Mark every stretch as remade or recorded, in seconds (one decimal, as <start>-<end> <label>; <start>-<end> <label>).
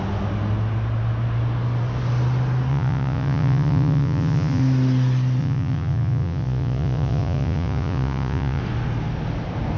0.0-2.7 recorded; 2.7-4.6 remade; 4.6-5.4 recorded; 5.4-8.6 remade; 8.6-9.8 recorded